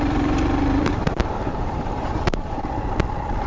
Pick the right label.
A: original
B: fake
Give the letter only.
B